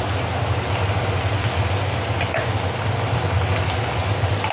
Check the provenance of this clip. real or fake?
real